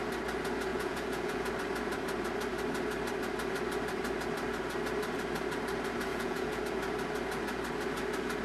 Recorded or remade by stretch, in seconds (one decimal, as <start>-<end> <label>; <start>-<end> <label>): 0.0-0.7 recorded; 0.7-1.5 remade; 1.5-6.1 recorded; 6.1-6.6 remade; 6.6-8.4 recorded